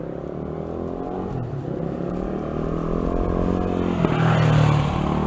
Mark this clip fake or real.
real